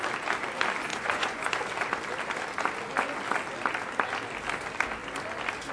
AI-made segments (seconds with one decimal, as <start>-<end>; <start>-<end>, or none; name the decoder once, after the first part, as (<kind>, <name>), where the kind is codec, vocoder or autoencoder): 0.9-1.6 (vocoder, Vocos)